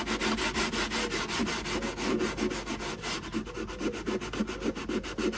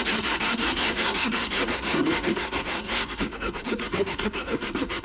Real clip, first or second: first